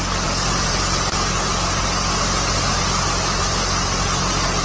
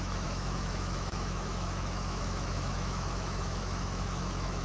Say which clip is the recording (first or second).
first